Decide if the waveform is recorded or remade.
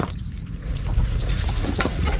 remade